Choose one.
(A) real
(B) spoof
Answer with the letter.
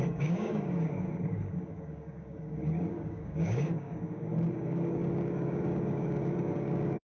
B